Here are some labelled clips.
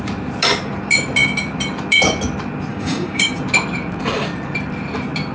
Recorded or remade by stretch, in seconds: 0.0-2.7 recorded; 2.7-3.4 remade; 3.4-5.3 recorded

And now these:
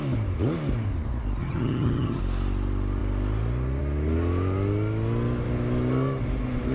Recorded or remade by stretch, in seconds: 0.0-1.4 recorded; 1.4-2.2 remade; 2.2-6.7 recorded

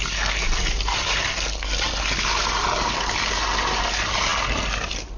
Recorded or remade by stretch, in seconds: 0.0-5.2 recorded

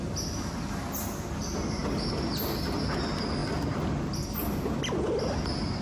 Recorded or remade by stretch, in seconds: 0.0-5.8 recorded

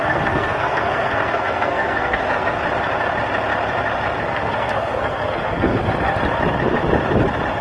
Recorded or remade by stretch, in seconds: 0.0-2.6 remade; 2.6-4.2 recorded; 4.2-5.8 remade; 5.8-7.6 recorded

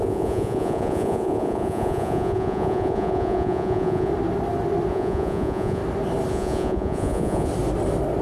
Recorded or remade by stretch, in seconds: 0.0-4.1 remade; 4.1-4.9 recorded; 4.9-5.8 remade; 5.8-6.3 recorded; 6.3-7.5 remade; 7.5-8.2 recorded